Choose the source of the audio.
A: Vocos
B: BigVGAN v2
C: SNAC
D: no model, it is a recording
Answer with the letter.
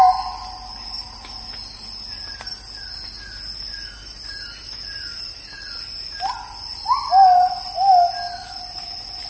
D